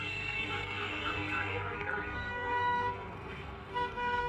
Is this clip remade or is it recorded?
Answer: remade